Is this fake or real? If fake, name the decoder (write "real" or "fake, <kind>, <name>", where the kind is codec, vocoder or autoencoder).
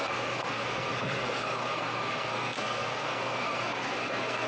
fake, codec, SNAC